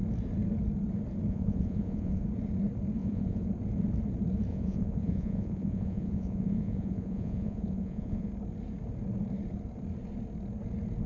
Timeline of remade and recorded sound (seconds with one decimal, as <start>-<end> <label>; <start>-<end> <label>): 0.0-1.3 recorded; 1.3-2.2 remade; 2.2-3.0 recorded; 3.0-3.5 remade; 3.5-4.5 recorded; 4.5-8.3 remade; 8.3-11.1 recorded